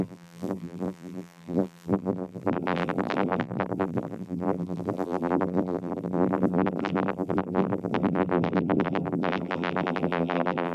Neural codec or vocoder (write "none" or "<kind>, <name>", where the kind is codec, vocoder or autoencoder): vocoder, BigVGAN v2